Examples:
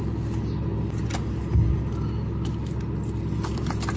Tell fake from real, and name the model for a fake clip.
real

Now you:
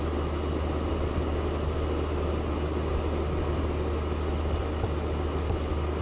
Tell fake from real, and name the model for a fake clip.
real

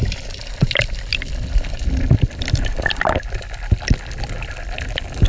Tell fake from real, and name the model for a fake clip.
fake, vocoder, BigVGAN v2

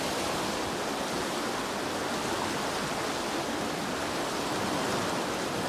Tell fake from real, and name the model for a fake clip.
real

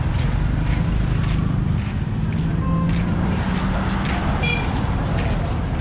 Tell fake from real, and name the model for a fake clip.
real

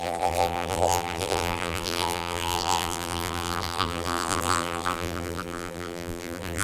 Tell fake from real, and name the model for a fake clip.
fake, vocoder, BigVGAN v2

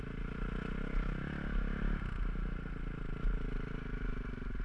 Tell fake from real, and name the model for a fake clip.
real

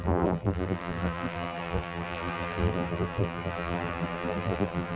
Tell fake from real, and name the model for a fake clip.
fake, vocoder, BigVGAN v2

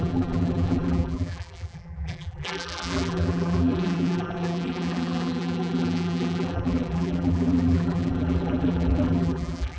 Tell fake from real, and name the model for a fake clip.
fake, vocoder, BigVGAN v2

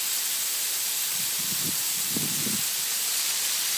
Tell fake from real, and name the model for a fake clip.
fake, vocoder, BigVGAN v2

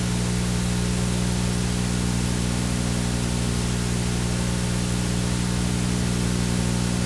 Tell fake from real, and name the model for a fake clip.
real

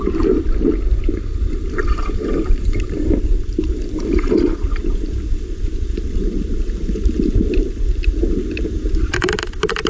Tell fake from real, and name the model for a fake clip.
fake, vocoder, BigVGAN v2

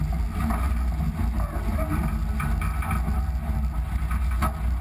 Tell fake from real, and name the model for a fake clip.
real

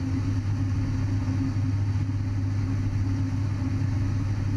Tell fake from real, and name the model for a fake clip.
real